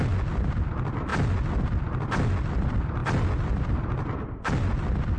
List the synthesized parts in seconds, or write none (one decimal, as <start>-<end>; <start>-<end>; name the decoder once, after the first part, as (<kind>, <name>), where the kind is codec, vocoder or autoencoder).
none